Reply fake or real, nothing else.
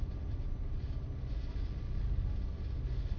real